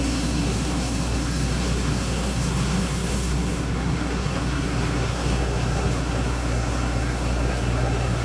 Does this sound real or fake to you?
fake